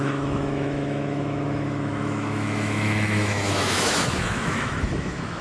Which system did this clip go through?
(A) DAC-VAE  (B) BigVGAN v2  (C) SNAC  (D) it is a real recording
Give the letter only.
A